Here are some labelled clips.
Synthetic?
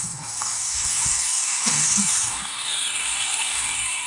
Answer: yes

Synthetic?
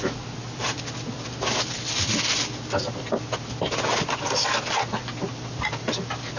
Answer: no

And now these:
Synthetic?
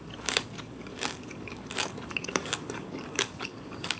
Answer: yes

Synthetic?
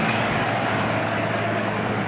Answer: yes